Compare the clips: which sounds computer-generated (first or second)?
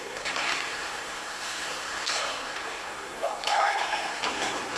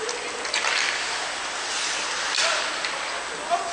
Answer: first